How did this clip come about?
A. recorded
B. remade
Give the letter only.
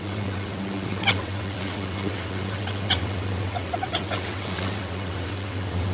B